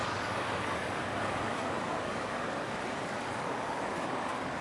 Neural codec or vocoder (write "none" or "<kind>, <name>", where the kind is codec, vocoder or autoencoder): codec, DAC